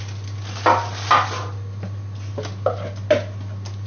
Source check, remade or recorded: recorded